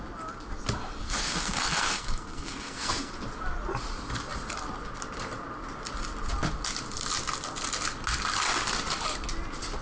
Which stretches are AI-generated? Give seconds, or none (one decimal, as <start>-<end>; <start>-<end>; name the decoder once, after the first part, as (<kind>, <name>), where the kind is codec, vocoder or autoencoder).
1.0-3.1 (codec, SNAC)